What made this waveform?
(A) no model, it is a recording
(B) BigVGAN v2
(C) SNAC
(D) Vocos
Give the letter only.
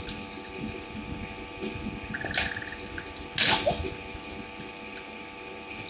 A